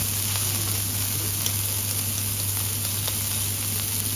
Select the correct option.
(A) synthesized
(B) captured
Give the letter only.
B